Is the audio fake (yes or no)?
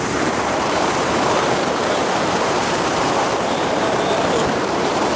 yes